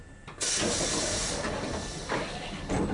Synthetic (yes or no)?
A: no